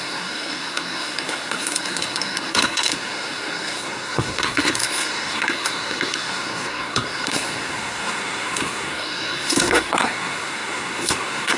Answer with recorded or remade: remade